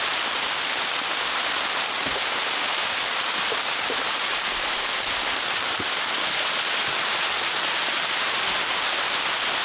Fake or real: real